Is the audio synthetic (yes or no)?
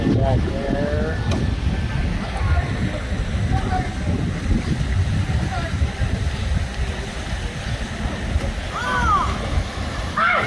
no